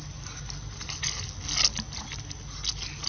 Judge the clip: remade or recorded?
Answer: recorded